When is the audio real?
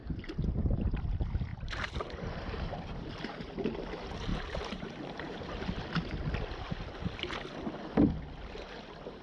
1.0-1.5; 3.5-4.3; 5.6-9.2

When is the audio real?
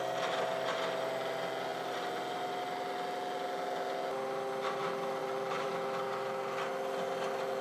0.0-5.2; 5.7-7.6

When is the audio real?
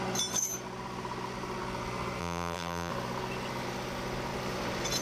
0.0-2.2; 2.9-5.0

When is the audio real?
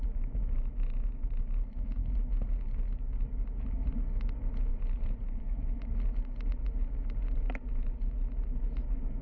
0.0-4.7; 5.4-9.2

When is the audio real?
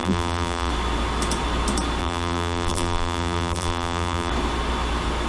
0.7-2.0; 4.3-5.3